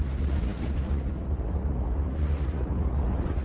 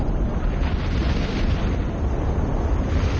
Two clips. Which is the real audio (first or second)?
second